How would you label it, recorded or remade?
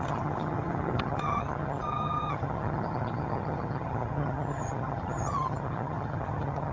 remade